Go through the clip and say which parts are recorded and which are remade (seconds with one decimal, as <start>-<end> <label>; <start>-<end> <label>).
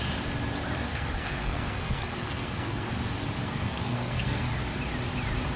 0.0-0.9 recorded; 0.9-2.9 remade; 2.9-3.4 recorded; 3.4-4.5 remade; 4.5-5.6 recorded